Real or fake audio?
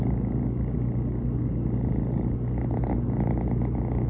real